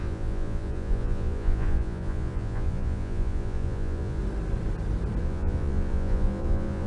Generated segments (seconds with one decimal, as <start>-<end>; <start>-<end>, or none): 0.0-4.2; 5.2-6.9